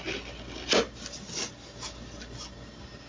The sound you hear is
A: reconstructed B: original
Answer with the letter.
B